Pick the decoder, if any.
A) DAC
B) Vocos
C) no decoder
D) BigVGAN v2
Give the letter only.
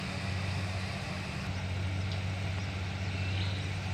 C